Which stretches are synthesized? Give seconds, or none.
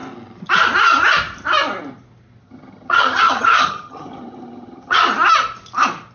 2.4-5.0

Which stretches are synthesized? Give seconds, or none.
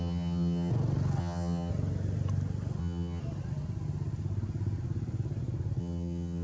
0.0-0.7; 1.2-1.7; 2.8-3.2; 5.8-6.4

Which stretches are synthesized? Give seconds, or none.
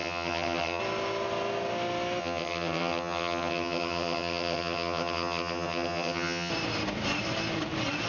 0.0-0.8; 2.2-6.5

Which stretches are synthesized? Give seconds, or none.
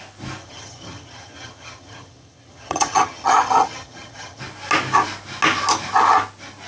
0.4-4.4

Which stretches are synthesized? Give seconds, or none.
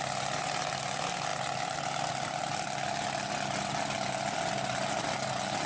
none